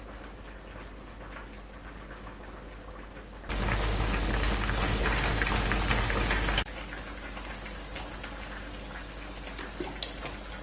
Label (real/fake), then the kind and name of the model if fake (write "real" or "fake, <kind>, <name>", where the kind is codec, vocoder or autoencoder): real